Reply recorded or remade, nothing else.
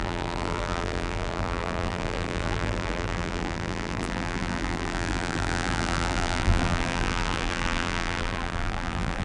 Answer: remade